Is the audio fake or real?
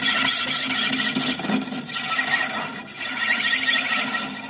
real